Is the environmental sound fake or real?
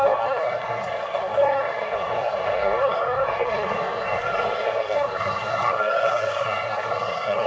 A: fake